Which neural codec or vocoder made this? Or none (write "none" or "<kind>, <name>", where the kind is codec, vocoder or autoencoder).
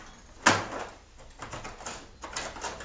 none